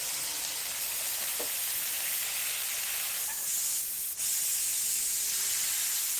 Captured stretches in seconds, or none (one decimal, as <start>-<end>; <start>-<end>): 0.0-6.2